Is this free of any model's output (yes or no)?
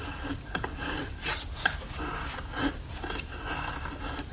yes